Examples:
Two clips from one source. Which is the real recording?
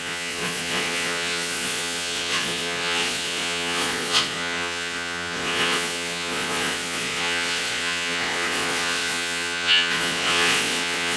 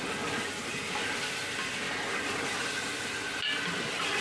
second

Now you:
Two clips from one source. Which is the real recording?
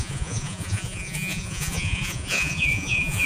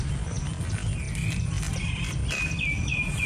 second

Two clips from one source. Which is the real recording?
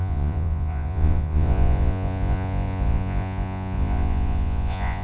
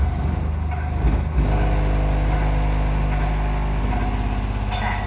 second